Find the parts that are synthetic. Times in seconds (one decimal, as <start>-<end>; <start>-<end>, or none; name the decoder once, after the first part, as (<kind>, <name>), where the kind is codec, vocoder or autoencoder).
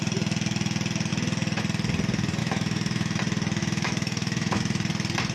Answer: 2.4-3.2 (autoencoder, DAC-VAE); 3.6-4.6